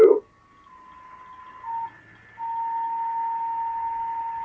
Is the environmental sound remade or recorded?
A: recorded